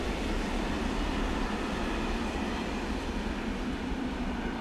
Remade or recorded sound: recorded